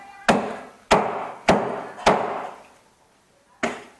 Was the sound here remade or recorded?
recorded